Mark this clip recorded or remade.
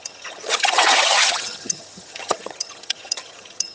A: remade